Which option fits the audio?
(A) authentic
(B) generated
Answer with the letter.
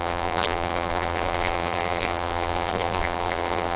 B